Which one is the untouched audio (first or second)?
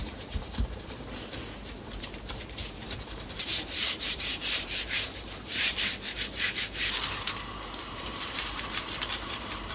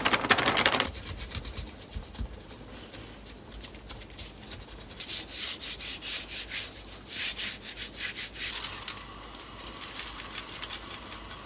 second